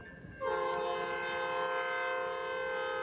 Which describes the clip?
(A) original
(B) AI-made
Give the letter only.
A